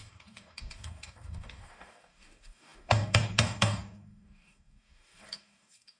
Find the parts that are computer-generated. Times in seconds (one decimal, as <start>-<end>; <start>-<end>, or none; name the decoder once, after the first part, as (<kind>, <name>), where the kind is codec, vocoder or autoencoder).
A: 0.0-6.0 (codec, DAC)